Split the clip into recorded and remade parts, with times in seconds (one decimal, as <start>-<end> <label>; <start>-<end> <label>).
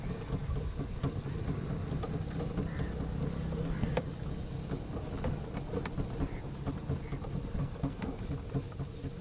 0.0-7.6 recorded; 7.6-8.2 remade; 8.2-9.2 recorded